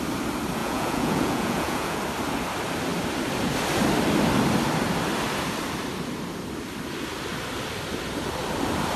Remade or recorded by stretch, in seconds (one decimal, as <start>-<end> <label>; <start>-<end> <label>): 0.0-0.6 recorded; 0.6-2.0 remade; 2.0-9.0 recorded